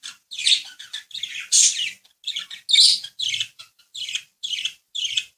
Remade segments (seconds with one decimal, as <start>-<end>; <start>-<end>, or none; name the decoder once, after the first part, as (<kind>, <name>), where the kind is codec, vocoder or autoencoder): none